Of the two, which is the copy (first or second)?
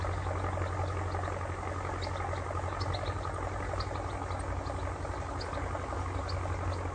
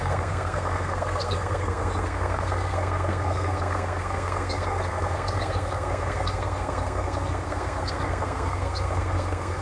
second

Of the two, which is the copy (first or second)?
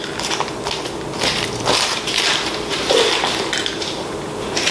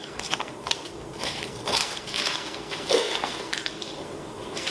second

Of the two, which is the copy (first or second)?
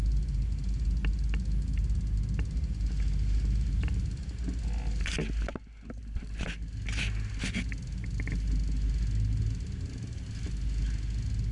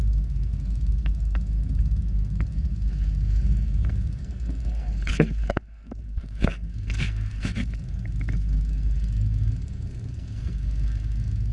second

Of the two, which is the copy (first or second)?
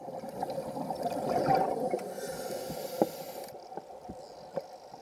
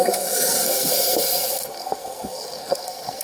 second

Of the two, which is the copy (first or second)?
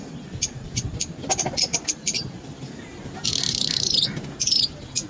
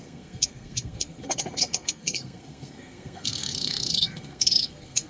second